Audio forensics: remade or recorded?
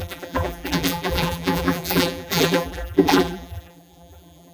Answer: remade